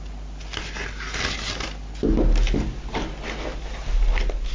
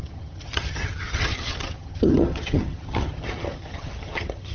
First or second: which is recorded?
first